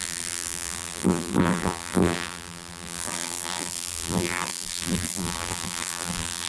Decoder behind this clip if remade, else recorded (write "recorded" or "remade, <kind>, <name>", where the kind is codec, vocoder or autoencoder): remade, vocoder, BigVGAN v2